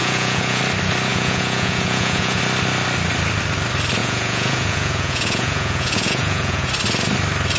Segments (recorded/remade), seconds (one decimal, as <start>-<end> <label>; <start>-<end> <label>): 0.0-0.6 remade; 0.6-1.1 recorded; 1.1-2.4 remade; 2.4-4.0 recorded; 4.0-6.7 remade; 6.7-7.6 recorded

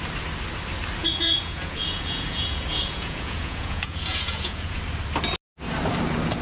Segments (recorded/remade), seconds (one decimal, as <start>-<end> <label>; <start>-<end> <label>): 0.0-1.0 recorded; 1.0-4.8 remade; 4.8-6.4 recorded

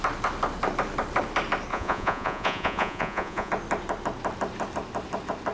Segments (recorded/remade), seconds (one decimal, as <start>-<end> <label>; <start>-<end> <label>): 0.0-1.7 recorded; 1.7-3.5 remade; 3.5-5.5 recorded

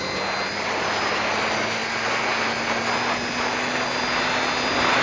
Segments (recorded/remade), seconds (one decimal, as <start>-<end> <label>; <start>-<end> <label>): 0.0-5.0 recorded

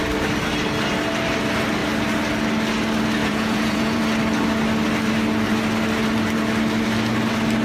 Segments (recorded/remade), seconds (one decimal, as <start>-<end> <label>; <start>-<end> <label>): 0.0-3.2 recorded; 3.2-4.0 remade; 4.0-7.6 recorded

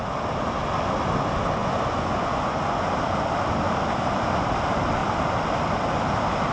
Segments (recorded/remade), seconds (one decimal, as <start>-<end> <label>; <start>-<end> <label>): 0.0-1.6 recorded; 1.6-2.9 remade; 2.9-6.5 recorded

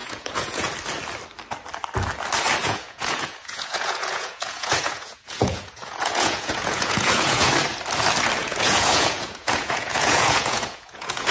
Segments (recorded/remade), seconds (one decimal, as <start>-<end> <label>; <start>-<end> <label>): 0.0-0.7 remade; 0.7-2.6 recorded; 2.6-7.5 remade; 7.5-8.4 recorded; 8.4-11.3 remade

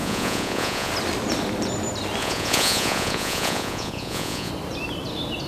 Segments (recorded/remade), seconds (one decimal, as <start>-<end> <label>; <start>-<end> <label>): 0.0-0.9 remade; 0.9-2.2 recorded; 2.2-4.5 remade; 4.5-5.5 recorded